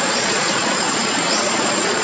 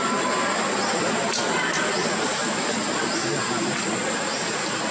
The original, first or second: second